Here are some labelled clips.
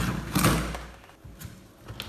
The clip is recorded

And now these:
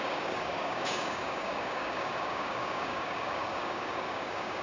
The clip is remade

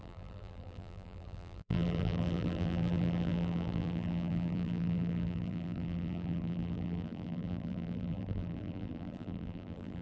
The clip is remade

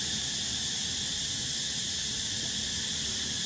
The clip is recorded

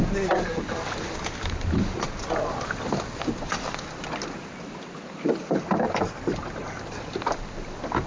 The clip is recorded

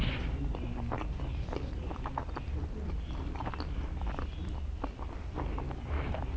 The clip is recorded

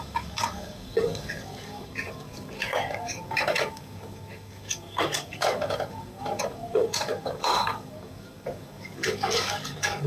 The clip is remade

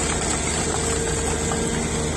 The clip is recorded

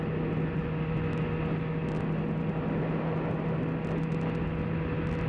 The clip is recorded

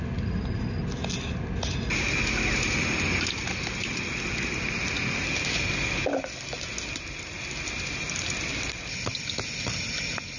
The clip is recorded